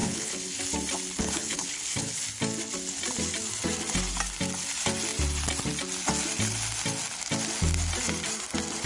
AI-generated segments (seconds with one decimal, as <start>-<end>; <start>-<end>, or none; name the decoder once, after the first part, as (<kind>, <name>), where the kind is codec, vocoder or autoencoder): 0.0-0.6 (codec, HILCodec); 1.2-2.2